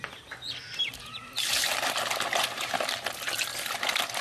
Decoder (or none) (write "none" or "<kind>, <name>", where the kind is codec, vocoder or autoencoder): none